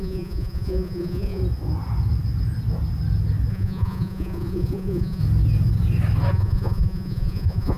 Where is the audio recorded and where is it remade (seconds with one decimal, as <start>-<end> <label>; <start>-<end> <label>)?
0.0-1.4 remade; 1.4-3.5 recorded; 3.5-5.2 remade; 5.2-6.3 recorded; 6.3-7.8 remade